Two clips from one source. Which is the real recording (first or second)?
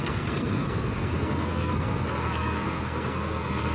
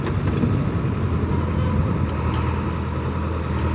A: second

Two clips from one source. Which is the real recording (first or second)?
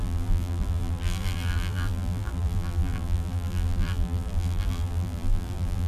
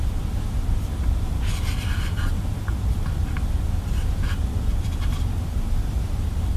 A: second